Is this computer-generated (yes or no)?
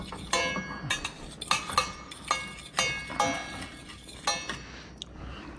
no